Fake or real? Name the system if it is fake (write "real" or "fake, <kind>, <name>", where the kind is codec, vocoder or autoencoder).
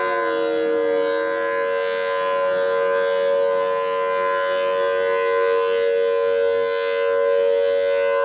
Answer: real